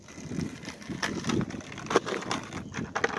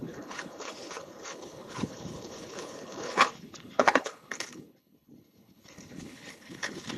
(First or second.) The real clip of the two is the first